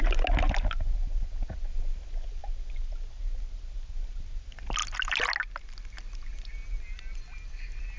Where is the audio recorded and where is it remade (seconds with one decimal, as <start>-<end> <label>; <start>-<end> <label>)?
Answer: 0.0-8.0 recorded